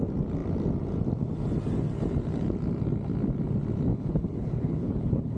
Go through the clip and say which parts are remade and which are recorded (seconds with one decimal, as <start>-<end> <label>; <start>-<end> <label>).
0.0-3.9 recorded; 3.9-5.4 remade